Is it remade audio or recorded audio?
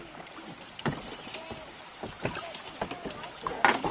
recorded